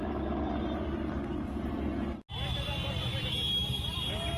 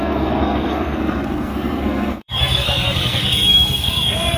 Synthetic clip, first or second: second